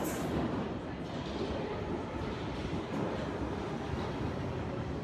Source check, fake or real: real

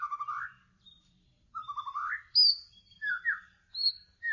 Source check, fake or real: real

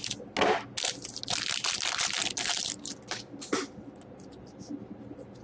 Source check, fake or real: real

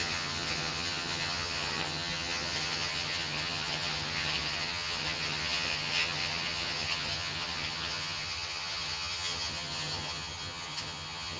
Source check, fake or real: fake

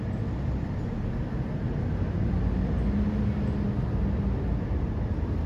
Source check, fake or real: real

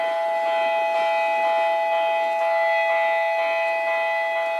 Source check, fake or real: real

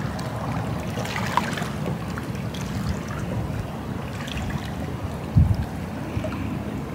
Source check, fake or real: real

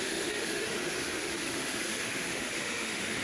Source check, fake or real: fake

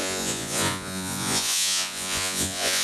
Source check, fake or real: fake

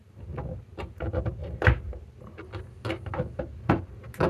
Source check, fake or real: real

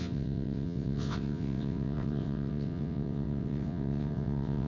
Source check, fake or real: fake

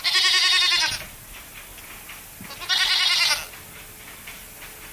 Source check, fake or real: real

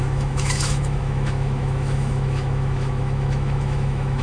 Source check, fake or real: fake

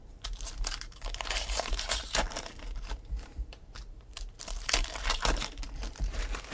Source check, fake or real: fake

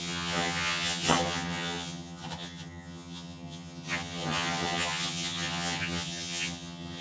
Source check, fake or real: fake